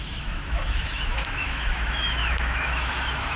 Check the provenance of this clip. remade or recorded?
remade